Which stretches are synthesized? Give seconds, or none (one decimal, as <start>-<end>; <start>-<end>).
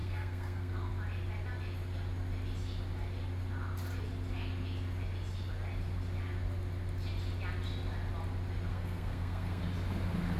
0.0-0.9; 8.7-9.6